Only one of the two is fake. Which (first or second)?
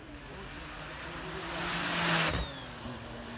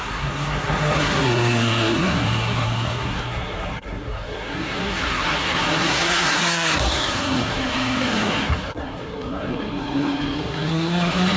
second